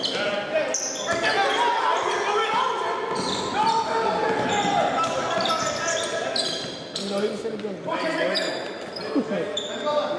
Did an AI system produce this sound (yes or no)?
no